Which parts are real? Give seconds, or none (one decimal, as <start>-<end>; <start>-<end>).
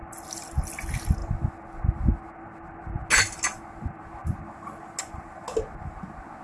0.0-6.4